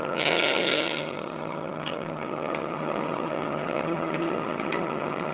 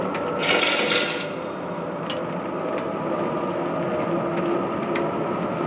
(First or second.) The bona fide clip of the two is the second